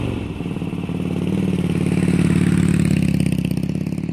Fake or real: real